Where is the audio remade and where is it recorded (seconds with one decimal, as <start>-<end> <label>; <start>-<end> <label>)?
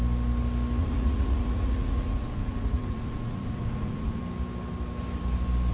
0.0-0.8 recorded; 0.8-4.2 remade; 4.2-5.7 recorded